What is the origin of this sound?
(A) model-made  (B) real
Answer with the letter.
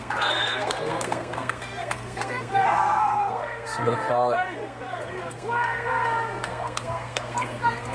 A